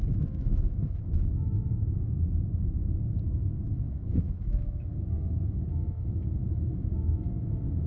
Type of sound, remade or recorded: remade